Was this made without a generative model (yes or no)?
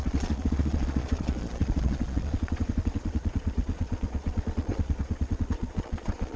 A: no